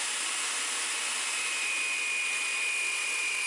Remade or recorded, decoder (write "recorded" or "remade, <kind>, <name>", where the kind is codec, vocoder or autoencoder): recorded